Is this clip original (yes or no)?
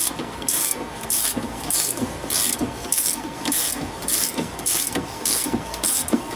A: no